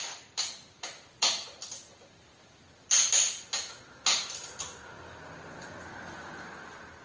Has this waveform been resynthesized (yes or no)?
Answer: no